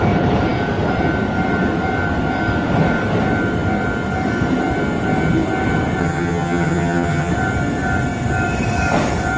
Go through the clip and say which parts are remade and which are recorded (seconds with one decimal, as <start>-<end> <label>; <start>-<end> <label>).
0.0-6.0 recorded; 6.0-7.3 remade; 7.3-9.4 recorded